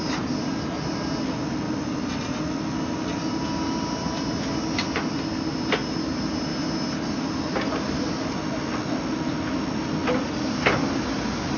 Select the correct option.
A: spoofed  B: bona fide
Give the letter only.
B